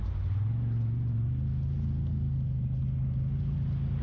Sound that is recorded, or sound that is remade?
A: recorded